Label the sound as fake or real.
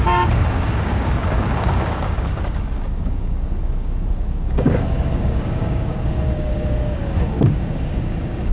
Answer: fake